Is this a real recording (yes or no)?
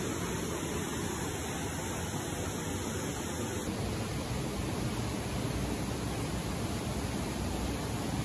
yes